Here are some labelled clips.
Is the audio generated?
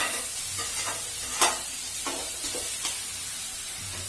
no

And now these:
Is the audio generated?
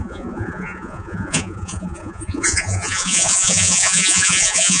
yes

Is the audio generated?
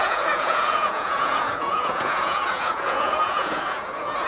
yes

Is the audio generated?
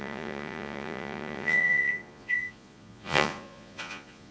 yes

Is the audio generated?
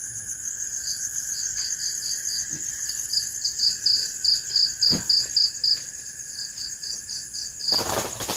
no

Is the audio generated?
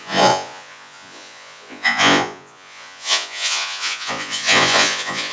yes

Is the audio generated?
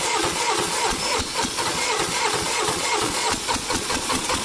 yes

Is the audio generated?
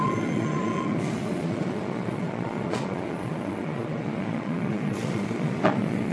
yes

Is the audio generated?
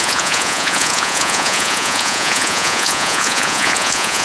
yes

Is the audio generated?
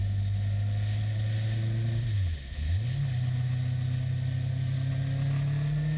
no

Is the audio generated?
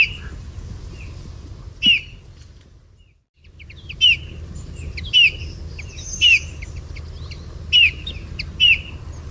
no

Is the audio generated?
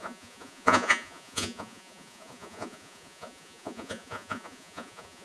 yes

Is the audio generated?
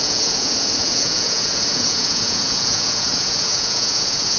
yes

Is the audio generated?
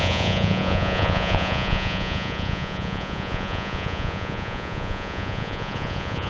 yes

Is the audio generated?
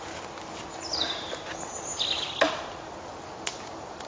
no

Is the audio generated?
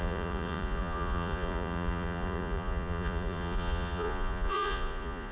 yes